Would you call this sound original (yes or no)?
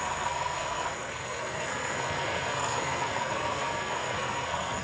no